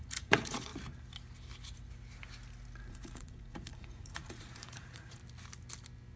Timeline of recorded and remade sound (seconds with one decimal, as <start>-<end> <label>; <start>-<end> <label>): 0.0-0.7 remade; 0.7-2.9 recorded; 2.9-5.2 remade; 5.2-6.2 recorded